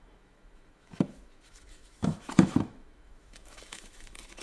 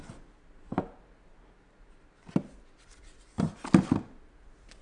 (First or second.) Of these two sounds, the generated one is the first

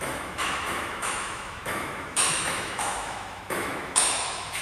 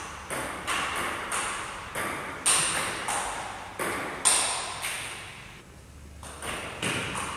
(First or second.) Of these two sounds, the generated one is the first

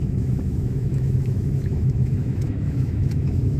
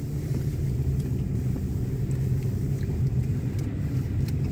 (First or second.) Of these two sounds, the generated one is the first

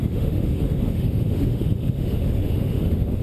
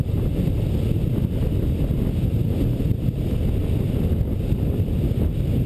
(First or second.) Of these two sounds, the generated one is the first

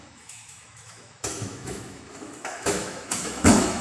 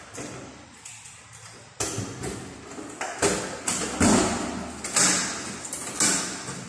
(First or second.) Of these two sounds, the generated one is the first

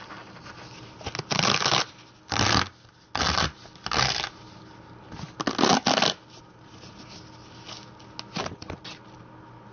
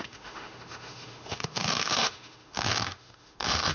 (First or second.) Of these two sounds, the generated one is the second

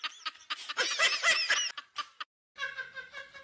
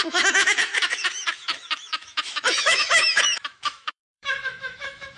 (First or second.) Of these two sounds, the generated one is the second